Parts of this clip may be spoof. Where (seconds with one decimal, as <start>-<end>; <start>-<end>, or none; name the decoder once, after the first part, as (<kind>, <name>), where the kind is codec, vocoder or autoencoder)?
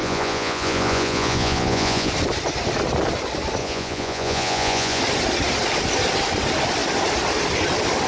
0.0-2.1 (vocoder, Vocos); 3.6-5.0